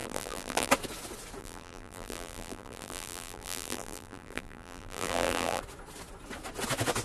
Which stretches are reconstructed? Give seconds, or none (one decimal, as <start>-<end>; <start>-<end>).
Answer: 0.0-0.7; 1.4-5.6